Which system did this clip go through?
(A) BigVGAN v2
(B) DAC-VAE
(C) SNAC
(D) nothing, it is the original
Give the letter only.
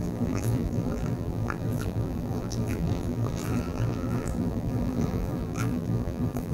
A